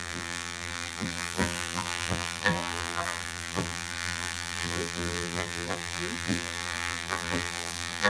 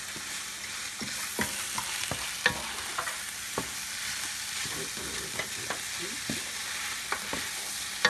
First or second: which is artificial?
first